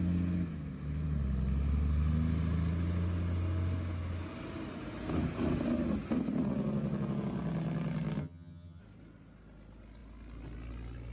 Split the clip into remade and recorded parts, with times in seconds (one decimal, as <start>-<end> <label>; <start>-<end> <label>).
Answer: 0.0-8.2 recorded; 8.2-8.8 remade; 8.8-11.1 recorded